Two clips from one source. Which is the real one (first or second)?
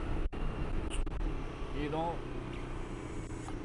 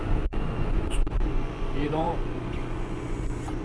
first